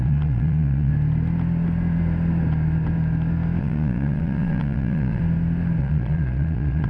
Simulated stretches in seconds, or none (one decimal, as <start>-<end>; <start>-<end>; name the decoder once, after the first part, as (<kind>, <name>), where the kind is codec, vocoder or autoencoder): 0.0-0.9 (vocoder, Vocos); 3.6-5.2; 5.8-6.9

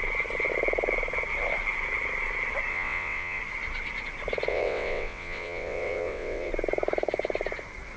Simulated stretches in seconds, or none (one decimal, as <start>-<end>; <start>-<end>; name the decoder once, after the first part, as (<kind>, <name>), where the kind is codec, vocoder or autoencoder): 2.7-3.4 (vocoder, WaveNeXt); 4.5-6.5